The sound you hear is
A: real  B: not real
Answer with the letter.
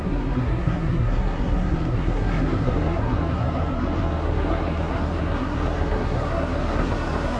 B